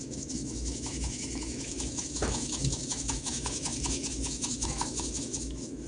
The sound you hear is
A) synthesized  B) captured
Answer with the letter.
A